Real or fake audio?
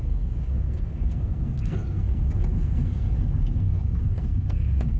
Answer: fake